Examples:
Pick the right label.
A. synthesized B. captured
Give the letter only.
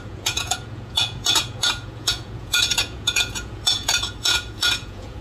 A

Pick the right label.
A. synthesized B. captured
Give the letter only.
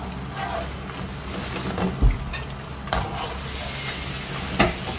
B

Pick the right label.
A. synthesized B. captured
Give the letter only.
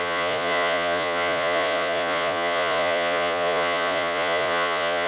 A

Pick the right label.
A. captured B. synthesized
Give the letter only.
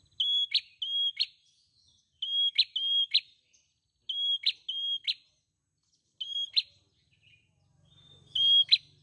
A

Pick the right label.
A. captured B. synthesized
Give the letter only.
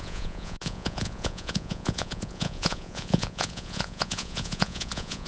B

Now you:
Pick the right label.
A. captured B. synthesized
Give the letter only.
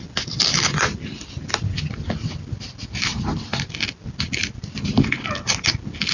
A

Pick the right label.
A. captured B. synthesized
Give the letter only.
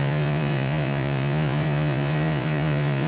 B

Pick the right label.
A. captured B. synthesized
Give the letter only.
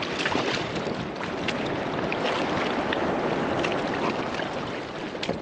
A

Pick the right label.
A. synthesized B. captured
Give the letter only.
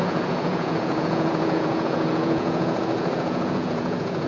A